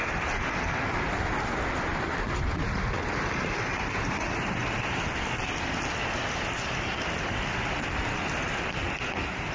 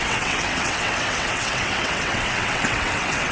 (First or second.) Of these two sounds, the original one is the first